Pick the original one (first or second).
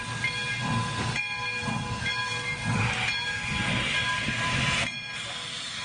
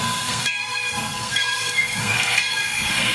first